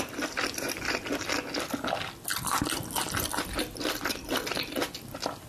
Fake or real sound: real